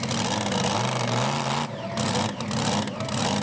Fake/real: real